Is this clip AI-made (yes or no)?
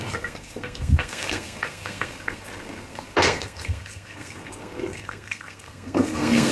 yes